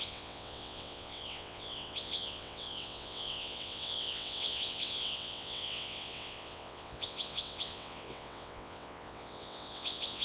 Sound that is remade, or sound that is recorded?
remade